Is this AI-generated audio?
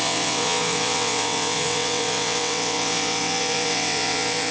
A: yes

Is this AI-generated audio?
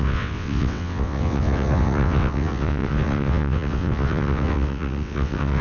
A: yes